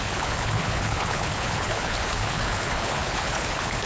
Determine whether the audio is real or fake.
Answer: fake